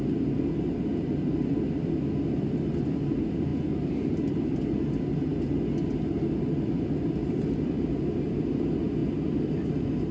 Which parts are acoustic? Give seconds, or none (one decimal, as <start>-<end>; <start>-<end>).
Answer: 0.0-10.1

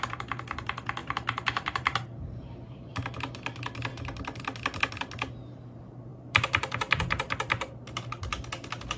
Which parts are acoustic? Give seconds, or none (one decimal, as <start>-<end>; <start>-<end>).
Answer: 0.0-1.0; 2.9-6.1; 8.0-9.0

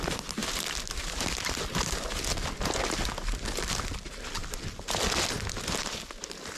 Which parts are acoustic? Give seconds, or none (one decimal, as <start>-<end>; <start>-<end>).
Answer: 0.0-6.6

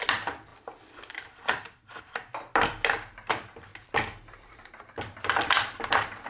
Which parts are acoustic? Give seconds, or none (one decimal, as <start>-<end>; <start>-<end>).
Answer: none

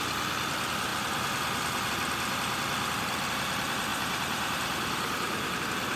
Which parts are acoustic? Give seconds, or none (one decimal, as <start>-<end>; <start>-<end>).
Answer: 0.0-3.9; 5.6-6.0

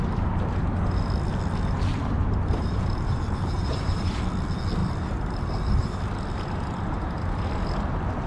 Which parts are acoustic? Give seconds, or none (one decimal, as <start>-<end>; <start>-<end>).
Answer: 0.0-1.9; 4.2-4.8; 6.0-8.3

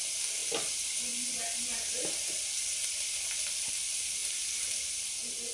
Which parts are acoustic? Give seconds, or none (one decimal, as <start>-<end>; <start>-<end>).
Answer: 0.0-0.4; 3.7-5.5

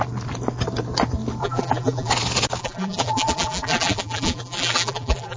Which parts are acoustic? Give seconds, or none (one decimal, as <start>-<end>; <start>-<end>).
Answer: 0.0-1.4; 2.1-2.6